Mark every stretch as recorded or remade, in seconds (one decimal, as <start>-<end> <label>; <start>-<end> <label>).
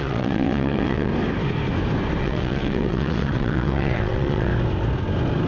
0.0-1.1 remade; 1.1-2.2 recorded; 2.2-4.5 remade; 4.5-5.5 recorded